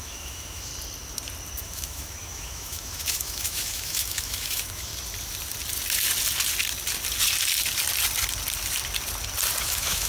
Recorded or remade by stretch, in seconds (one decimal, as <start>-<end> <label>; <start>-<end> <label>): 0.0-0.7 remade; 0.7-1.6 recorded; 1.6-4.9 remade; 4.9-9.6 recorded; 9.6-10.1 remade